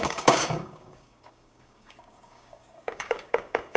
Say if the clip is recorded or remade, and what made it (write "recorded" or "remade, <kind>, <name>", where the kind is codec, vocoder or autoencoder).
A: remade, codec, DAC